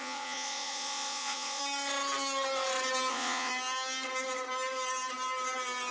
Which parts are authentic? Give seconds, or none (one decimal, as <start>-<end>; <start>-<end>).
1.6-3.1; 3.5-5.9